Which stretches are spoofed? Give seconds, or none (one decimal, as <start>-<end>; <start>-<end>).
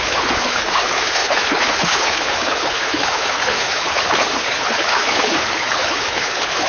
0.0-6.7